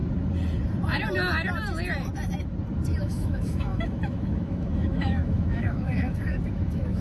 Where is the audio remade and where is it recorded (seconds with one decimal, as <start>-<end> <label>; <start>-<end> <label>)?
0.0-3.0 recorded; 3.0-7.0 remade